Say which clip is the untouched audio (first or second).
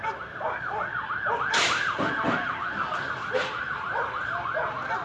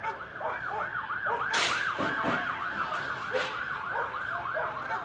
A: second